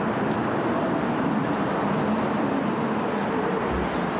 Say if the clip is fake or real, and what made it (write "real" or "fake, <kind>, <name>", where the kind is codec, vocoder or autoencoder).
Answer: real